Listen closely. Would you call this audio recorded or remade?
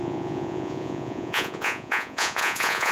remade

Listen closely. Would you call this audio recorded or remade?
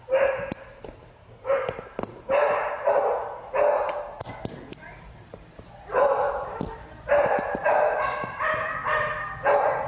recorded